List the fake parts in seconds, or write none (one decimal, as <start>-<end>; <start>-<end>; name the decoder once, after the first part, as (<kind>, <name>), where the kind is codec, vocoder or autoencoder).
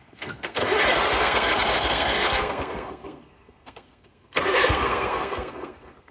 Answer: 0.0-0.6 (codec, SNAC); 1.2-6.1